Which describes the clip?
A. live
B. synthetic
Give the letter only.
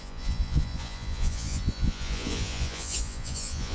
B